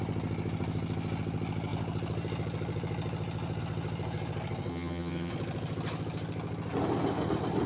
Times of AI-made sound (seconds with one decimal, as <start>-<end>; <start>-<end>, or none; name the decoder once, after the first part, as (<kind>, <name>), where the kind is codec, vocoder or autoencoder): 4.7-5.3 (vocoder, HiFi-GAN)